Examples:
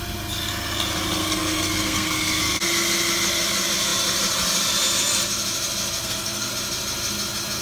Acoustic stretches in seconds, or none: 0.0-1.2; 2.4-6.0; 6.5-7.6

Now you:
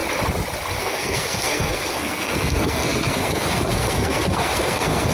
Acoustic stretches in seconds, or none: 0.0-0.8

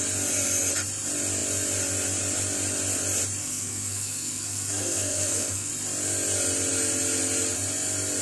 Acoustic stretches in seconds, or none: 0.0-3.4; 5.7-8.2